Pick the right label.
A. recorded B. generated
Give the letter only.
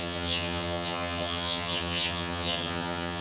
B